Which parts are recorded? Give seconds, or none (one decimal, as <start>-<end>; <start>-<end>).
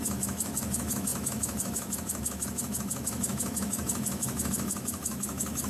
none